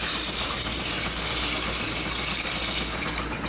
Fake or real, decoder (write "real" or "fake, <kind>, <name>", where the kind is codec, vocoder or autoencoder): fake, vocoder, BigVGAN v2